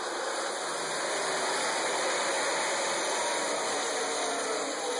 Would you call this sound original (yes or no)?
yes